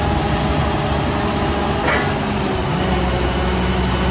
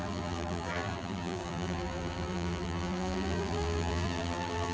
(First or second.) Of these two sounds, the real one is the first